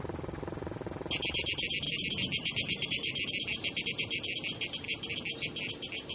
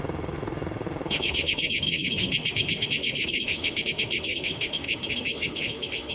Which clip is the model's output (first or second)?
second